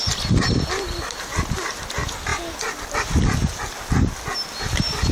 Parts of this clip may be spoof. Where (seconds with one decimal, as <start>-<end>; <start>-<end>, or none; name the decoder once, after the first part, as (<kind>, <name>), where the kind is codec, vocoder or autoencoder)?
none